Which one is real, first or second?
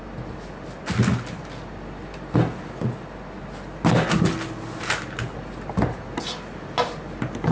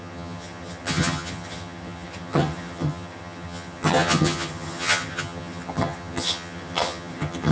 first